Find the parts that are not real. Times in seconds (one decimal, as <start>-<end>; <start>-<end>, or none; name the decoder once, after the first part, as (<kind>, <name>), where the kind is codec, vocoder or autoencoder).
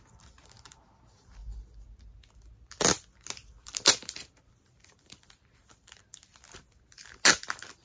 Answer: 3.4-6.6 (vocoder, BigVGAN v2)